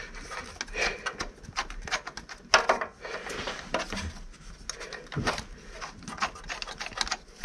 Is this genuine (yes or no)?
yes